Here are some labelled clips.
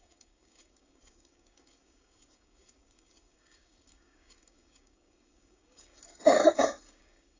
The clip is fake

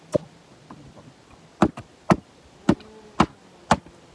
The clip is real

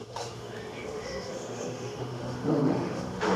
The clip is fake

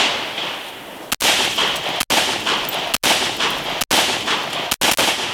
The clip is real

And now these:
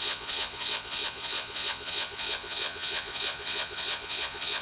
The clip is fake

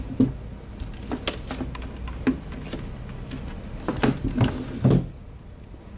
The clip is real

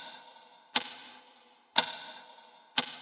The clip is real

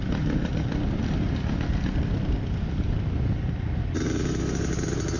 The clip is real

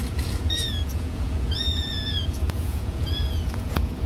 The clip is fake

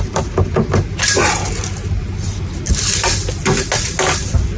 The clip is real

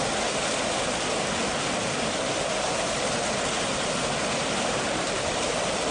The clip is real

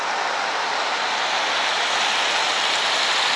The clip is real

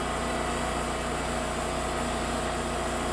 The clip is real